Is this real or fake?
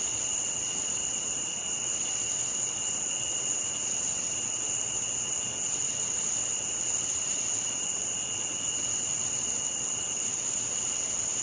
fake